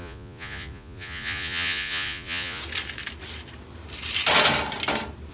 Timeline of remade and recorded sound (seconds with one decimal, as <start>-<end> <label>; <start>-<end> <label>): 0.0-2.6 remade; 2.6-5.3 recorded